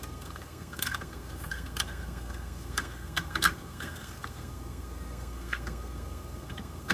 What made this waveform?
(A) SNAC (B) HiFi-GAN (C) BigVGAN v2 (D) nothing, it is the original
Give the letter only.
A